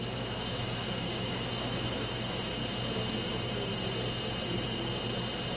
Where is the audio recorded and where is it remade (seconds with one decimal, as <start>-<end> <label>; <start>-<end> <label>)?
0.0-2.6 remade; 2.6-3.3 recorded; 3.3-3.7 remade; 3.7-5.6 recorded